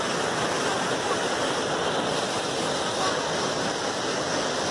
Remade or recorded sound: recorded